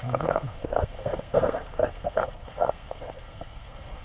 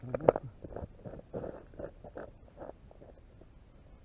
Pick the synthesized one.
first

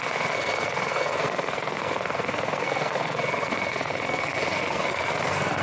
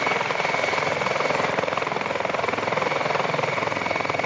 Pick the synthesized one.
first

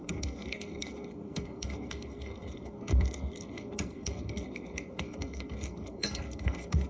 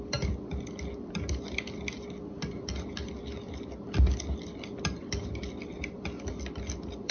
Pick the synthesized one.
first